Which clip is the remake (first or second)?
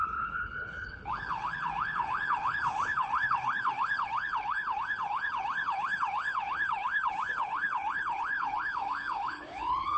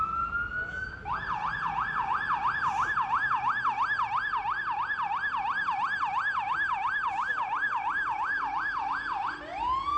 first